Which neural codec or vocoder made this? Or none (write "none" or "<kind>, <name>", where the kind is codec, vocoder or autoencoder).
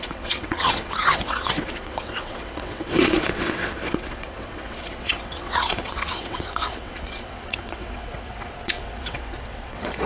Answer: vocoder, WaveNeXt